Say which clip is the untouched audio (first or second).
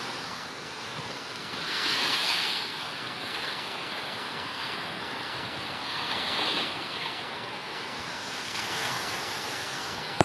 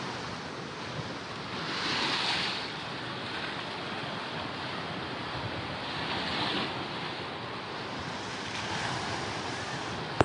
second